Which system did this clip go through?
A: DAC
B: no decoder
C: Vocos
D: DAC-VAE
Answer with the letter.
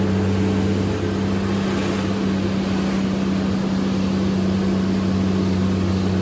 B